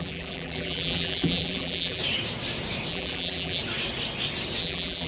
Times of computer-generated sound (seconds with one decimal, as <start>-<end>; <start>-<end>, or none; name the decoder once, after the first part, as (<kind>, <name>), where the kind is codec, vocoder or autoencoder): 0.0-2.0 (vocoder, BigVGAN v2); 2.9-3.6; 4.6-5.1